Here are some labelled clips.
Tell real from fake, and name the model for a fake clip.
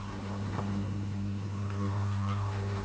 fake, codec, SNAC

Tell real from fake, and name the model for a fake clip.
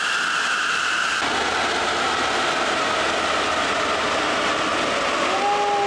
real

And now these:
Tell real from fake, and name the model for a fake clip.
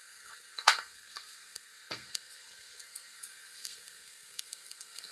fake, codec, SNAC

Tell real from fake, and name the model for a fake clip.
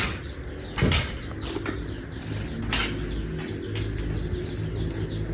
real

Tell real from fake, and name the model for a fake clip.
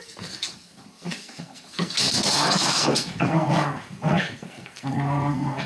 fake, codec, SNAC